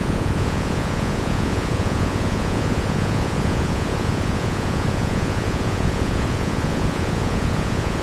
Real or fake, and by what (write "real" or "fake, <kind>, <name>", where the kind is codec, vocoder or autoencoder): fake, vocoder, Vocos